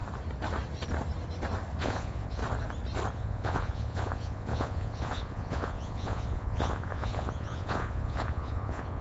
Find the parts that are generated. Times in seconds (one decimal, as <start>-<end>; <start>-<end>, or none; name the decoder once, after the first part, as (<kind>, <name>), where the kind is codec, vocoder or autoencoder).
1.8-2.4 (vocoder, Vocos); 3.1-9.0